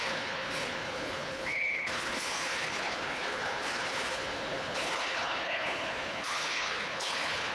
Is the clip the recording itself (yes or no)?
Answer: no